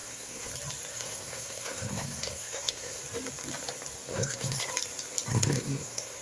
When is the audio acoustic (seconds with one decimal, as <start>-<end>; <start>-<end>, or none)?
0.5-0.9; 3.0-4.1; 4.7-5.3